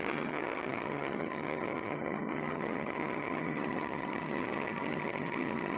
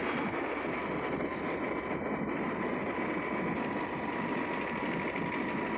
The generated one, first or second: first